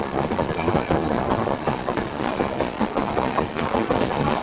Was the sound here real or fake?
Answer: fake